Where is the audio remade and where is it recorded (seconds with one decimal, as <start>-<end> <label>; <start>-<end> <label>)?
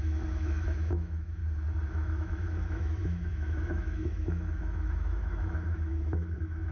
0.0-1.4 remade; 1.4-1.9 recorded; 1.9-6.7 remade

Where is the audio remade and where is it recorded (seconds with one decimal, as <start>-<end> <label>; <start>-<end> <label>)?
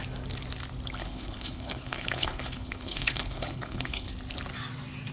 0.0-1.0 recorded; 1.0-4.1 remade; 4.1-5.1 recorded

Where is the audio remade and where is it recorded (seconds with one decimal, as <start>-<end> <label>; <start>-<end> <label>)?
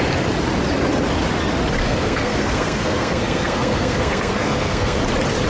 0.0-1.8 recorded; 1.8-5.0 remade; 5.0-5.5 recorded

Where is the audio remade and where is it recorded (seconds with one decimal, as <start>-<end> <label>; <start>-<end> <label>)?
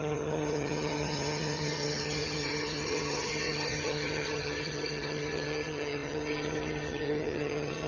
0.0-7.9 remade